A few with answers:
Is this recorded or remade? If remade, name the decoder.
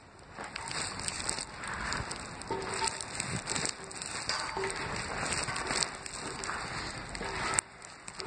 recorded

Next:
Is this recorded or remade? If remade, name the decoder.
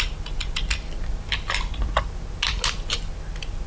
recorded